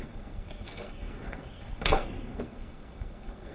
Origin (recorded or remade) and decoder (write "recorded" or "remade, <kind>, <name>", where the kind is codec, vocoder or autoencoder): remade, codec, SNAC